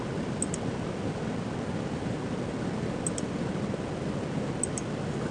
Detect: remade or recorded recorded